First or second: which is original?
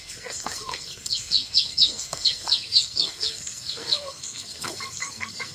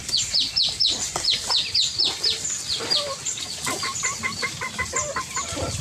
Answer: second